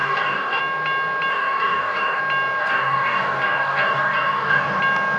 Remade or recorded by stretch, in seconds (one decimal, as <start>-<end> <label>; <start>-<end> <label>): 0.0-0.6 remade; 0.6-1.3 recorded; 1.3-2.2 remade; 2.2-2.6 recorded; 2.6-4.8 remade; 4.8-5.2 recorded